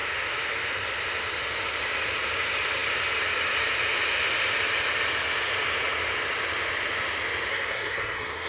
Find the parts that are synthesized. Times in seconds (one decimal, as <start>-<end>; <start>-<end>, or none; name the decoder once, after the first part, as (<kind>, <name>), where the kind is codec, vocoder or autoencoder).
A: 7.5-8.5 (codec, SNAC)